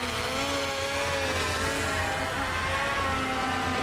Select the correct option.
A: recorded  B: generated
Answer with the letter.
A